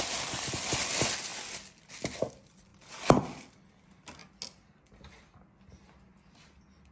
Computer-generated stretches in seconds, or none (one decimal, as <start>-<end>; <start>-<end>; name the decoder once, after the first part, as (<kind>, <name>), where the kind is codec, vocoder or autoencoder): none